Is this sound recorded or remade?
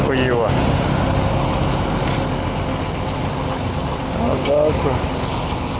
recorded